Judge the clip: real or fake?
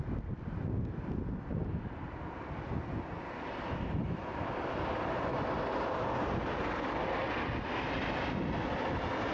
real